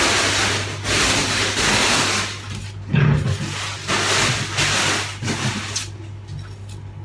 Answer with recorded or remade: recorded